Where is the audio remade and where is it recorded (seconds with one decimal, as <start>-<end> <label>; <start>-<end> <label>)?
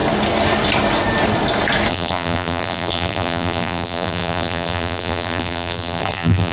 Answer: 0.0-1.9 recorded; 1.9-6.5 remade